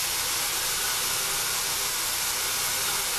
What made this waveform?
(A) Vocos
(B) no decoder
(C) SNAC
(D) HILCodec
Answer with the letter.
B